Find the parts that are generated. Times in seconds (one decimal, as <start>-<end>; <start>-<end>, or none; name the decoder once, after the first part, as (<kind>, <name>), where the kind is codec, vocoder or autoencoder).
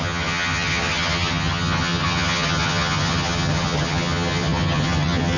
0.0-5.4 (vocoder, HiFi-GAN)